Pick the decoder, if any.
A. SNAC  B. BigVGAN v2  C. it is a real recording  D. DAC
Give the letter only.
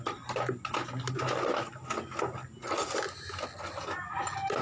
C